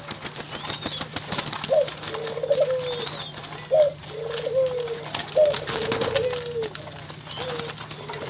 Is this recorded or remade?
recorded